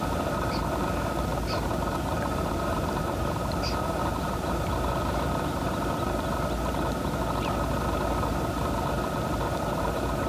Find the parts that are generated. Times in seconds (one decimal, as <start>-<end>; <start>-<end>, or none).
1.3-5.9